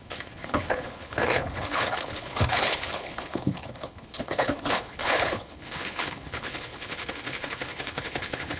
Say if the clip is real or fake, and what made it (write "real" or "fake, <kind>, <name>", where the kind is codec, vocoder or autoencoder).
fake, codec, HILCodec